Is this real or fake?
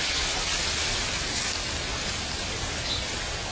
real